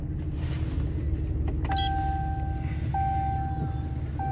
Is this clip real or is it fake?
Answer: real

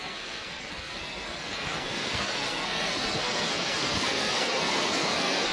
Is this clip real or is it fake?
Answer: fake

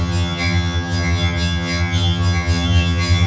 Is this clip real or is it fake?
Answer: fake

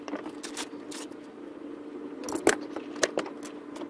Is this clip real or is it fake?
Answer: real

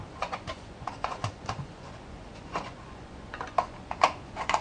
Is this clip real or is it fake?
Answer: fake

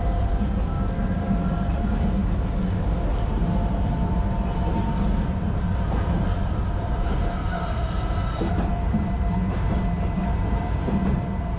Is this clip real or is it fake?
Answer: fake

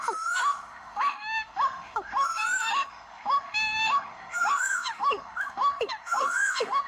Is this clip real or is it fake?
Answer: fake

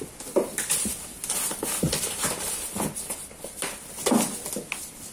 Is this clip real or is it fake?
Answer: real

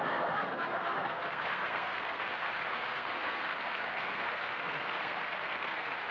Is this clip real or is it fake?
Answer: fake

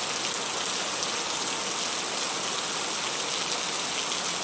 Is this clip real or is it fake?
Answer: real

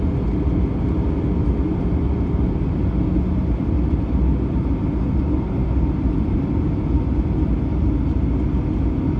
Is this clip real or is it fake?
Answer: real